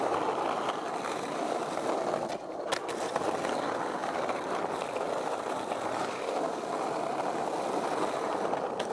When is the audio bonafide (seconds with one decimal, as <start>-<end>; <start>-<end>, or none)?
0.0-8.9